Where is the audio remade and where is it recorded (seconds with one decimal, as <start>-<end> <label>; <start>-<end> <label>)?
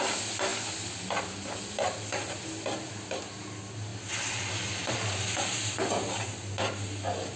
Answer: 0.0-7.4 recorded